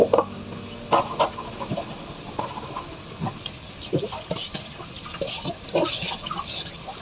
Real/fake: real